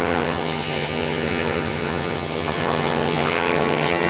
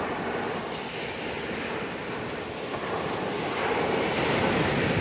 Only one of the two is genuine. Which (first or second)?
second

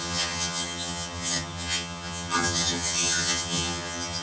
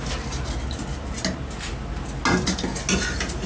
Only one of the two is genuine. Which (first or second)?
second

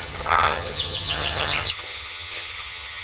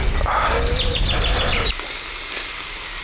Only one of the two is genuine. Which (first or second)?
second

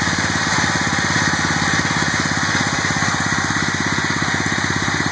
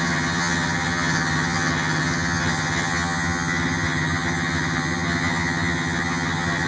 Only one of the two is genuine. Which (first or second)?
first